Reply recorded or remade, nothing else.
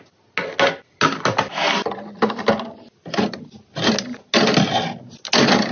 recorded